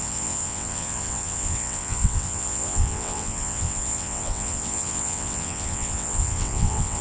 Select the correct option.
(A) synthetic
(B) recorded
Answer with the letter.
A